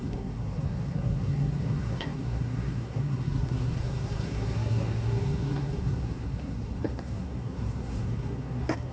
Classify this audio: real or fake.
fake